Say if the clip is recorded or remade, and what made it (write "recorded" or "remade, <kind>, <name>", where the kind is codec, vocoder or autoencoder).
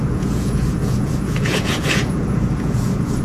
remade, vocoder, Vocos